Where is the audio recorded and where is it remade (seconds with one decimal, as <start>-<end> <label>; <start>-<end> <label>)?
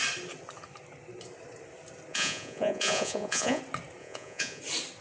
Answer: 0.0-2.1 recorded; 2.1-3.6 remade; 3.6-4.0 recorded; 4.0-4.6 remade; 4.6-5.0 recorded